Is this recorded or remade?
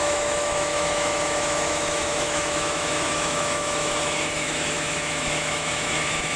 remade